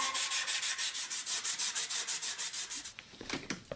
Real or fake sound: fake